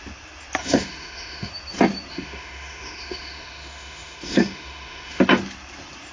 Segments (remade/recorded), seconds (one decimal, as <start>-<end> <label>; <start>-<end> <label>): 0.0-0.6 recorded; 0.6-1.5 remade; 1.5-2.1 recorded; 2.1-5.2 remade; 5.2-6.1 recorded